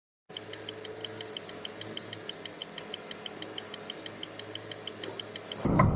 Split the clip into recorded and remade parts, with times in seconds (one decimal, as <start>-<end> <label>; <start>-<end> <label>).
0.0-6.0 recorded